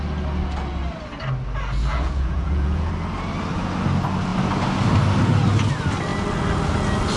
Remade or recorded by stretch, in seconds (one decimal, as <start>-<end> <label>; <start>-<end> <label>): 0.0-1.9 recorded; 1.9-2.9 remade; 2.9-7.2 recorded